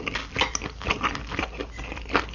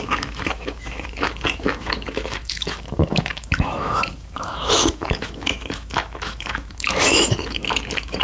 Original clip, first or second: first